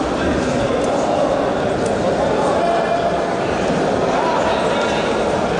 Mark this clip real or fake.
real